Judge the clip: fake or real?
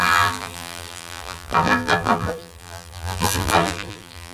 fake